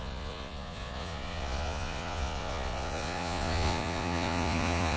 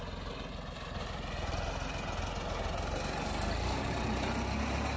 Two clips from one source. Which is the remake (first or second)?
first